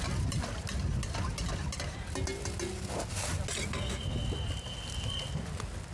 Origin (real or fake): real